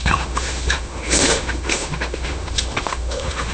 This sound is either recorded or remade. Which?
remade